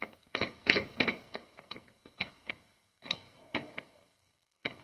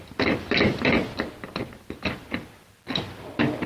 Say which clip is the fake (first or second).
first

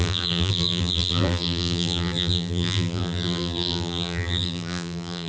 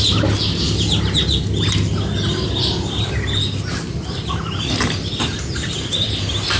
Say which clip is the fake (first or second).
first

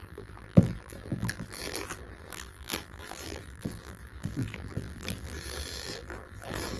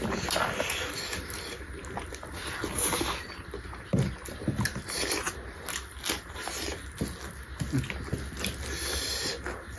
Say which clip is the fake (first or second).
first